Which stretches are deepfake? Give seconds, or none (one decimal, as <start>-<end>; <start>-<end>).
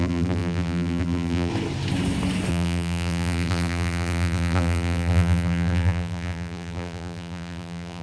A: 0.0-1.5; 2.5-8.0